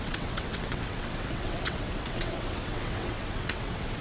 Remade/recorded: remade